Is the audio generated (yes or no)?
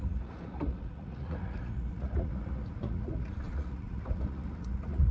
yes